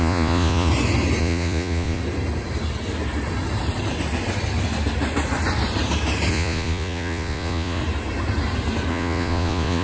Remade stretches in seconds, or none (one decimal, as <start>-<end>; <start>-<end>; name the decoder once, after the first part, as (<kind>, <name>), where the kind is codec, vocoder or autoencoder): 0.0-0.7 (vocoder, Vocos); 1.2-2.0; 6.3-7.8; 8.9-9.8